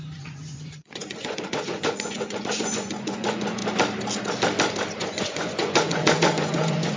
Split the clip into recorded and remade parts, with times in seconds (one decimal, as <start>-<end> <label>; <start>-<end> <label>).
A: 0.0-3.6 remade; 3.6-5.0 recorded; 5.0-7.0 remade